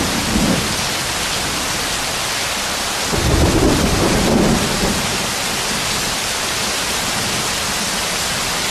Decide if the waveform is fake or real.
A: real